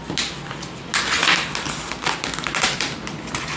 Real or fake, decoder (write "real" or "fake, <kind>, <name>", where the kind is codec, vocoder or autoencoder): real